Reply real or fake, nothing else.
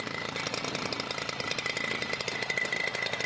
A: real